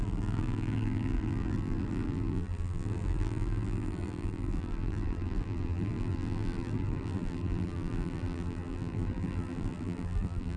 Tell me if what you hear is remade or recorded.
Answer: remade